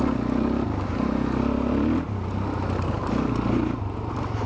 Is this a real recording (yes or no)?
yes